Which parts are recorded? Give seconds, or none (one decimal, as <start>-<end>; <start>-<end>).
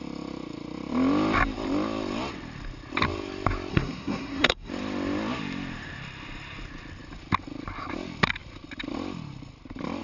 0.0-3.7; 4.7-10.0